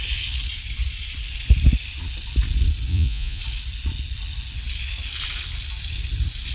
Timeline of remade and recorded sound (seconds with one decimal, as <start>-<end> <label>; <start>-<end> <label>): 0.0-2.9 recorded; 2.9-3.4 remade; 3.4-6.5 recorded